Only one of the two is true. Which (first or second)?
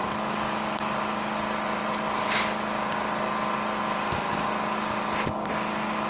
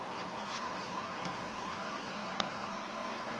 first